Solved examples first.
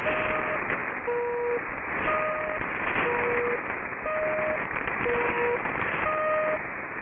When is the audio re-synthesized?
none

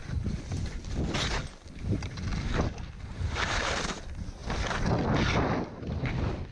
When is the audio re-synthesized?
none